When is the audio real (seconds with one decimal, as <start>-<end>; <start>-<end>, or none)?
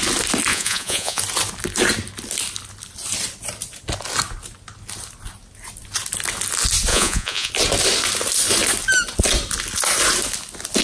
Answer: 0.0-0.5; 1.2-6.9; 7.5-10.8